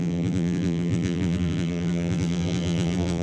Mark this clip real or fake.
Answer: fake